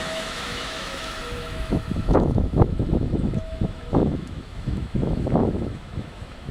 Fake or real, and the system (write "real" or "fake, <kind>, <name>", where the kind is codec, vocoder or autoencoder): fake, autoencoder, DAC-VAE